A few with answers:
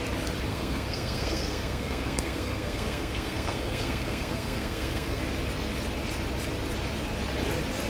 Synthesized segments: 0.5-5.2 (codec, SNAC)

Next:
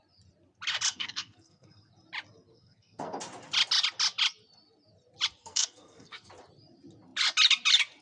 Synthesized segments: 0.9-1.9 (codec, SNAC); 2.5-3.2; 5.4-6.3

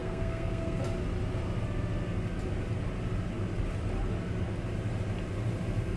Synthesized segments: 0.0-0.8 (codec, SNAC)

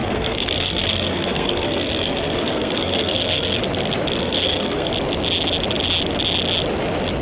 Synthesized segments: 0.0-3.6 (codec, SNAC); 4.2-4.9

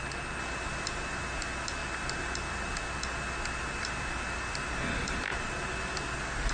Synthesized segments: none